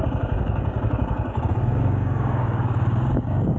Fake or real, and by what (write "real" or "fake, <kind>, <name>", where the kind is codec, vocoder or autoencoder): fake, codec, DAC